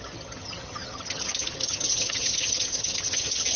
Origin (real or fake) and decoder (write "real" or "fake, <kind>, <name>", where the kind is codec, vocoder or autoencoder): fake, vocoder, HiFi-GAN